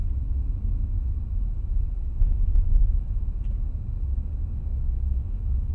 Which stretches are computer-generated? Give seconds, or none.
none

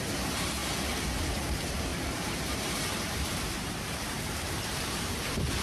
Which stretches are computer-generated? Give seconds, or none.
0.0-0.6 (vocoder, BigVGAN v2); 1.3-5.6

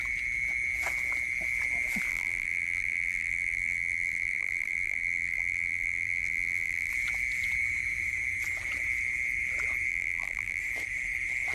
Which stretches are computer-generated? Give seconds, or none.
2.1-6.9 (vocoder, BigVGAN v2); 9.9-10.6

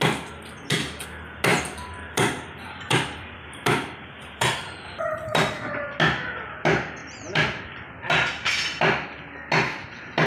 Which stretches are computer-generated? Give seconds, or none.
1.5-5.5 (vocoder, BigVGAN v2); 7.0-7.9

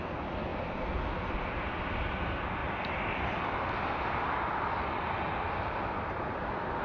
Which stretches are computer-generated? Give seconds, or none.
2.6-6.8 (vocoder, BigVGAN v2)